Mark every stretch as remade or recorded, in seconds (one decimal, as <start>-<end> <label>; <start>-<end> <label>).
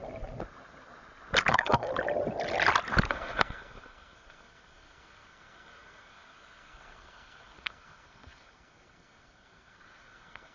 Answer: 0.0-1.5 recorded; 1.5-1.9 remade; 1.9-3.1 recorded; 3.1-10.5 remade